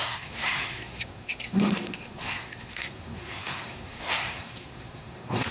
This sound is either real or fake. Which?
fake